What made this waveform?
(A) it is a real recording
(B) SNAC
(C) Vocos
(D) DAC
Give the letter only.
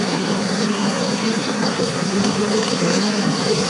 B